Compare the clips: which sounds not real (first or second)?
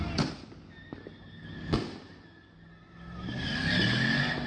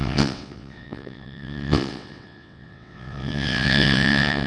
second